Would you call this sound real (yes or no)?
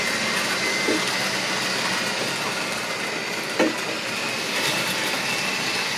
yes